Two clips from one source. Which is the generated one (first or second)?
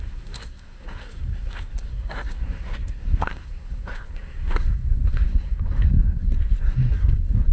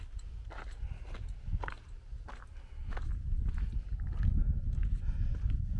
first